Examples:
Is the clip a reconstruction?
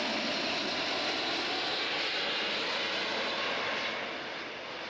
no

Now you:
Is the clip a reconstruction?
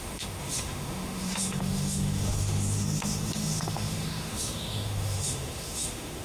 yes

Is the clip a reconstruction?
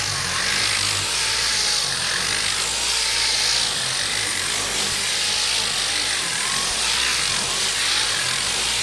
no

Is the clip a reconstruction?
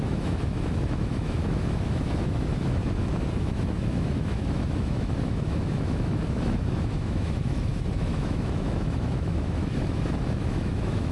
yes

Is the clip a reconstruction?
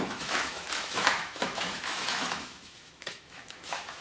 yes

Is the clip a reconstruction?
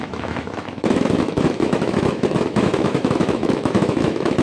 yes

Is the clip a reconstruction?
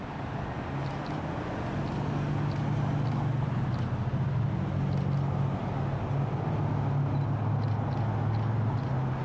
no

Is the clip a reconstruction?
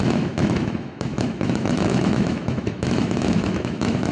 yes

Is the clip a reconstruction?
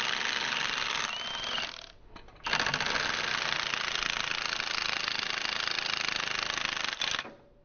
no